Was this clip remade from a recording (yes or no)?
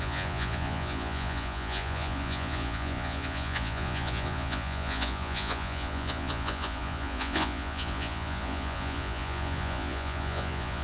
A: yes